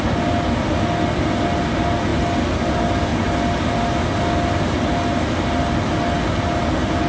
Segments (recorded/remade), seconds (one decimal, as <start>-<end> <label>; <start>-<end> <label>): 0.0-7.1 recorded